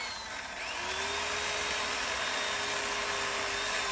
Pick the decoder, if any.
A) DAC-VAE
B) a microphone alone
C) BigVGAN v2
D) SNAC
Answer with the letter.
B